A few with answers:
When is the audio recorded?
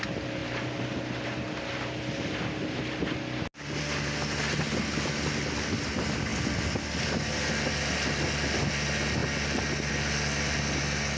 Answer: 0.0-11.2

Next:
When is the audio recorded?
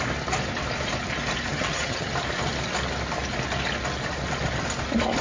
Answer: 0.0-1.5; 2.1-5.2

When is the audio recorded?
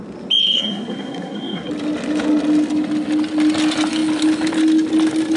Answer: 0.0-0.4; 1.7-5.4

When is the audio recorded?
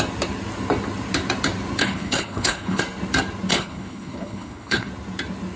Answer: 0.0-1.8; 2.8-3.5; 4.9-5.6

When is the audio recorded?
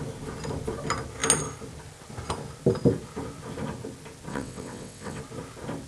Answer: 0.0-4.3; 5.2-5.9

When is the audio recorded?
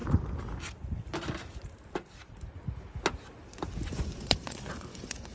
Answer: 0.0-3.8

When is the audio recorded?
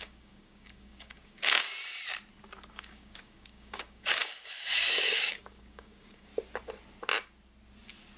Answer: 1.7-2.7; 6.3-8.2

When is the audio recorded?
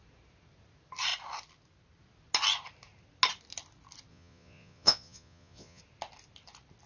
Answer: 0.0-4.1; 5.8-6.9